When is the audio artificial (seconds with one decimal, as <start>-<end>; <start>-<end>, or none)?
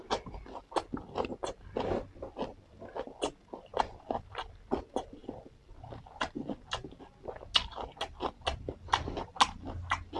none